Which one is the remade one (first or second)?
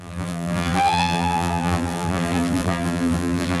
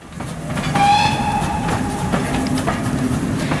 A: first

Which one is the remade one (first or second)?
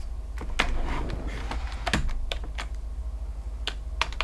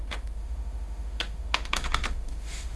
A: second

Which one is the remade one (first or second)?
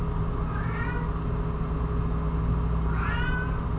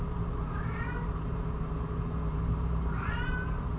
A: second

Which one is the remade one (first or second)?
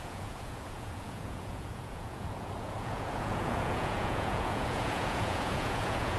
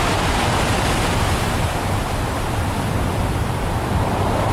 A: first